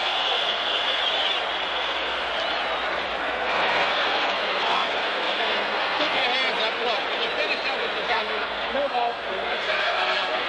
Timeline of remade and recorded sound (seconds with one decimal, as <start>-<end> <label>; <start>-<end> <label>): 0.0-1.0 remade; 1.0-1.7 recorded; 1.7-2.3 remade; 2.3-3.2 recorded; 3.2-6.2 remade; 6.2-8.1 recorded; 8.1-10.5 remade